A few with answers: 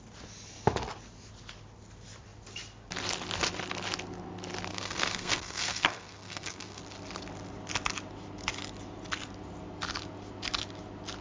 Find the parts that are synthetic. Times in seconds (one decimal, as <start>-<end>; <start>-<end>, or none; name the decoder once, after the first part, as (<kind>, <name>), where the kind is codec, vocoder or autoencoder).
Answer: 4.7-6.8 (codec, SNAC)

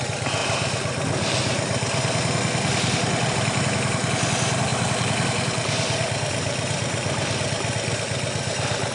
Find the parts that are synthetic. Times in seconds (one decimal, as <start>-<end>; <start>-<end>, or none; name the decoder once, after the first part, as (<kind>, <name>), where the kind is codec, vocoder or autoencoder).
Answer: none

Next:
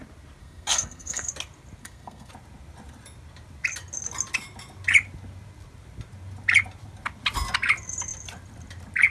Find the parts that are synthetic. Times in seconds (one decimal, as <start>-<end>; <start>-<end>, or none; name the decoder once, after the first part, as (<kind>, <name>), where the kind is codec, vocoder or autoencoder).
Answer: 0.4-1.3 (codec, SNAC); 1.8-2.3

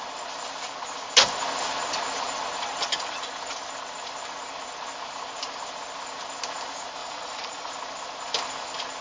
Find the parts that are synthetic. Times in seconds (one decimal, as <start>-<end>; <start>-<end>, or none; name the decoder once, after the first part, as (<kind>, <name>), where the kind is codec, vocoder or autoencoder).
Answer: 7.0-7.7 (vocoder, Vocos)